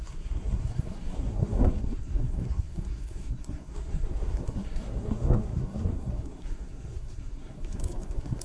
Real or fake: fake